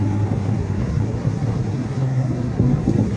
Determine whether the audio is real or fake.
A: fake